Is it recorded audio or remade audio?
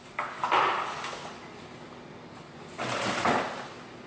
recorded